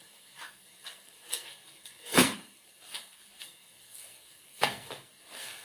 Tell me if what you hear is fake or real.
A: fake